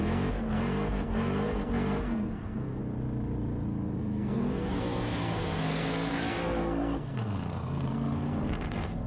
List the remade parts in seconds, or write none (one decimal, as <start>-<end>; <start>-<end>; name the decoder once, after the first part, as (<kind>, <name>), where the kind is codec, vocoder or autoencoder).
0.0-2.8 (codec, SNAC); 4.0-9.1